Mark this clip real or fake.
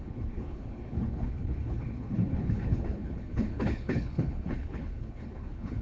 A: fake